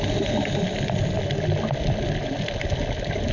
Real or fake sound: real